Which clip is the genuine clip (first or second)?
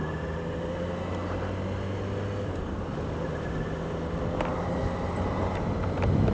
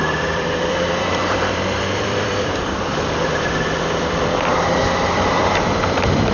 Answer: first